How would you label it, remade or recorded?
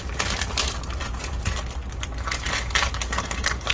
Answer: recorded